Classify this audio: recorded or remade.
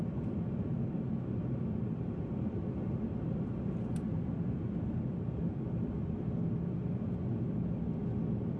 recorded